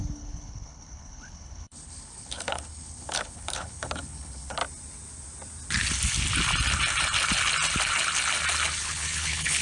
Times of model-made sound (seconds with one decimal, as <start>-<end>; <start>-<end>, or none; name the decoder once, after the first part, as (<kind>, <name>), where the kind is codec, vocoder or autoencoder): 0.0-4.6 (codec, HILCodec); 8.8-9.6